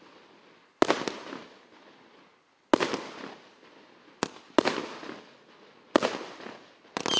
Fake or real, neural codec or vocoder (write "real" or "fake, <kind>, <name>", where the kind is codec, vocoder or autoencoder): real